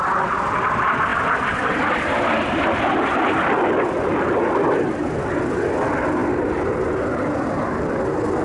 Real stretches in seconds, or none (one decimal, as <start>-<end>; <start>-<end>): 0.0-8.4